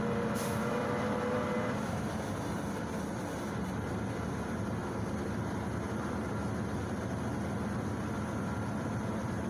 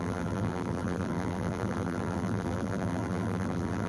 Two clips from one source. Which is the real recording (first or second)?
first